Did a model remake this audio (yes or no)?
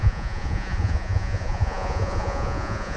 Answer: yes